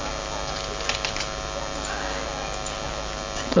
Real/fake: real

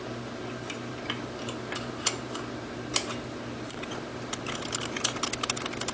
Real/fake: real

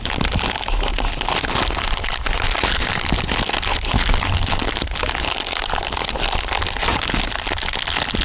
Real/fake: real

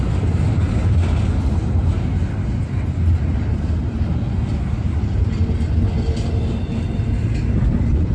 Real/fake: real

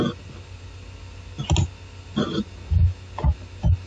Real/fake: real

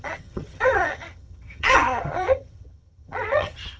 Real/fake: fake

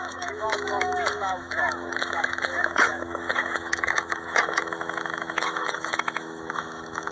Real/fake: fake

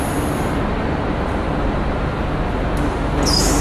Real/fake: real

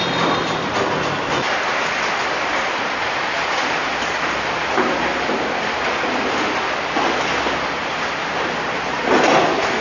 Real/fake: real